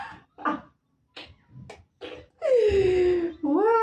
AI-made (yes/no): no